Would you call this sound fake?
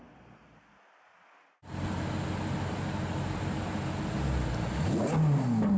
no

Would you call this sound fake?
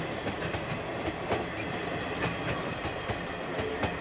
no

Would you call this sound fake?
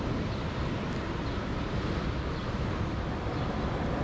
no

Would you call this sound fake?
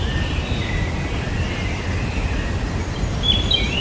no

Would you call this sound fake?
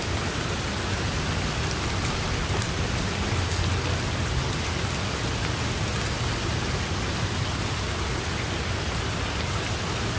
no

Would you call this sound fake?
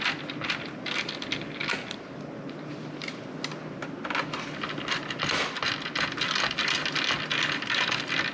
no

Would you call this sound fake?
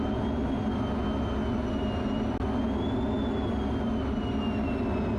no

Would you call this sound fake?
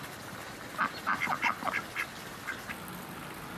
no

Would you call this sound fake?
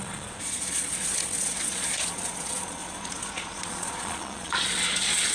yes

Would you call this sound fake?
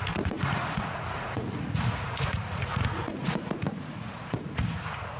yes